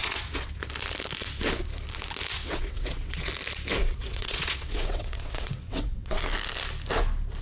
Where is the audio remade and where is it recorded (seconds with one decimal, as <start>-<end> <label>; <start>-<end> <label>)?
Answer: 0.0-0.6 remade; 0.6-2.3 recorded; 2.3-3.3 remade; 3.3-3.8 recorded; 3.8-6.2 remade; 6.2-7.4 recorded